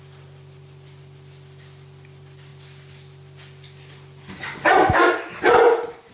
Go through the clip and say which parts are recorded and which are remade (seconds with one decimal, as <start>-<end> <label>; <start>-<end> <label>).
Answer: 0.0-6.1 recorded